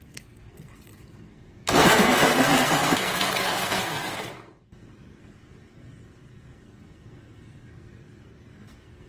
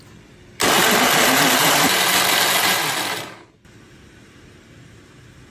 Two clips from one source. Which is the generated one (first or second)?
first